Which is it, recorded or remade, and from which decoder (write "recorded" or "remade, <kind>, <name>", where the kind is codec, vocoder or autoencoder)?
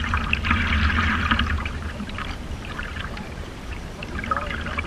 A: remade, vocoder, BigVGAN v2